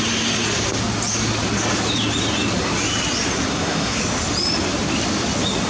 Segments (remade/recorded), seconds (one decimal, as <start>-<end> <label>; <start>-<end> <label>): 0.0-3.5 recorded; 3.5-4.0 remade; 4.0-5.7 recorded